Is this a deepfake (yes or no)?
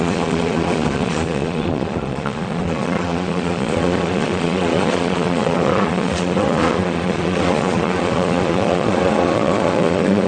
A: yes